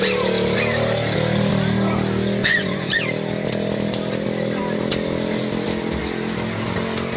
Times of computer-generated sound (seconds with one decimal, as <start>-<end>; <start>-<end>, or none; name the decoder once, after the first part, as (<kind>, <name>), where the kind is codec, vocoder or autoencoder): 2.4-3.0 (vocoder, Vocos)